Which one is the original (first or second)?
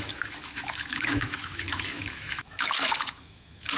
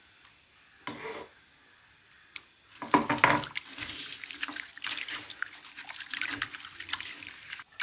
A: second